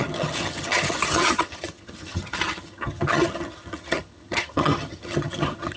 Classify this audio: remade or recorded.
remade